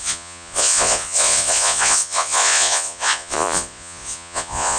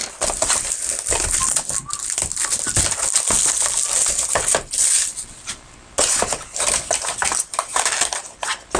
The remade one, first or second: first